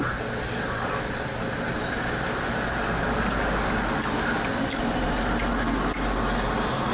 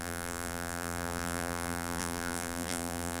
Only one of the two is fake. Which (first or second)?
second